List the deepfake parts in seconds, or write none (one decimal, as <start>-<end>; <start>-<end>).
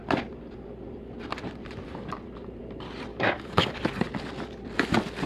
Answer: 3.1-3.8